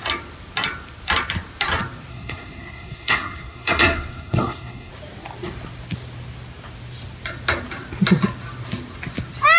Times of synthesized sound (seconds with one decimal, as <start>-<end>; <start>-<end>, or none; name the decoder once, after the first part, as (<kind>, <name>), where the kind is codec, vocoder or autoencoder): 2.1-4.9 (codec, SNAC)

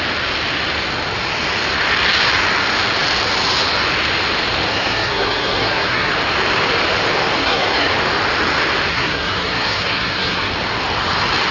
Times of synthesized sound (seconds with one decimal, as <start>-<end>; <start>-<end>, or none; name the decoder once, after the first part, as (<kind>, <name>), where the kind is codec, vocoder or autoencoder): 4.7-6.1 (codec, SNAC); 7.4-7.9; 8.9-10.5

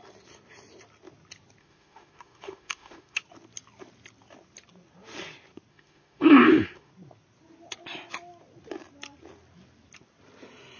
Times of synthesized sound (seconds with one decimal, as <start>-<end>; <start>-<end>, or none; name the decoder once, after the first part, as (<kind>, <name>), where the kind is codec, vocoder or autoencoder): 1.6-3.2 (autoencoder, DAC-VAE); 5.7-6.9

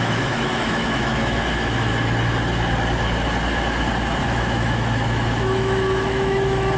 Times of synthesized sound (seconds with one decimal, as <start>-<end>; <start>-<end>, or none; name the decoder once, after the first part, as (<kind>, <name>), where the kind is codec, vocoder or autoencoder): 0.0-1.9 (autoencoder, DAC-VAE); 4.2-6.8

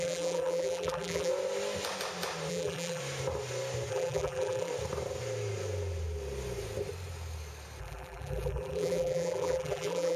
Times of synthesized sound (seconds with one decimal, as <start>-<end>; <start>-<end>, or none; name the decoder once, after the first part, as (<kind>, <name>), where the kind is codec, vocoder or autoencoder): 0.0-1.3 (vocoder, BigVGAN v2); 2.5-3.0; 3.9-4.7; 7.8-10.2

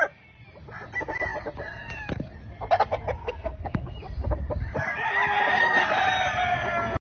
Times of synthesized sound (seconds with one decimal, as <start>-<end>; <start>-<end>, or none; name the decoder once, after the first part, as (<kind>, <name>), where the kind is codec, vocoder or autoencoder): 3.2-3.8 (codec, SNAC)

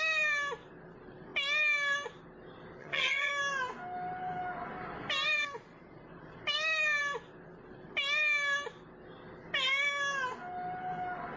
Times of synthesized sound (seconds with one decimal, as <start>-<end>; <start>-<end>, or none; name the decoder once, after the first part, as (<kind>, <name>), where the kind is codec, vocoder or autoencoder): 2.8-3.3 (vocoder, HiFi-GAN)